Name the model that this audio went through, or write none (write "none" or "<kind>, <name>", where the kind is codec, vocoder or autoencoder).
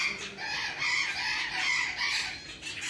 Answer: none